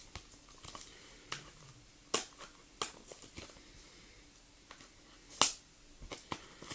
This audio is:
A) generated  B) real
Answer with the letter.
B